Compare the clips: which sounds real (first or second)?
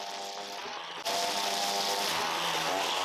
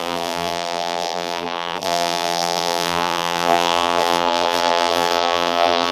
first